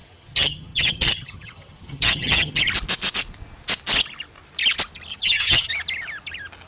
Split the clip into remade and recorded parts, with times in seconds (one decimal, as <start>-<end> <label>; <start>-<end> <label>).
0.0-2.6 remade; 2.6-5.1 recorded; 5.1-5.7 remade; 5.7-6.7 recorded